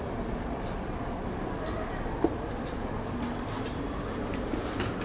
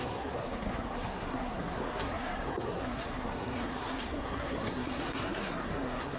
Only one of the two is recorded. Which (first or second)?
first